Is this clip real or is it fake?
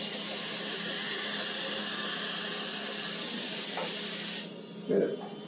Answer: real